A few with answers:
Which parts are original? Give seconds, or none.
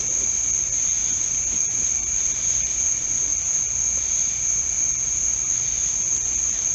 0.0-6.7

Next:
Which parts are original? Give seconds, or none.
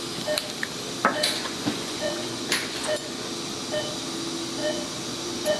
0.0-1.1; 3.3-4.6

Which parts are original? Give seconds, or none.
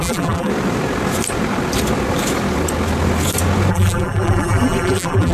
0.5-3.7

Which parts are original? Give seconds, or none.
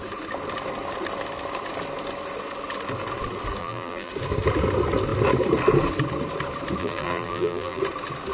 0.0-3.6; 4.1-6.8; 7.8-8.3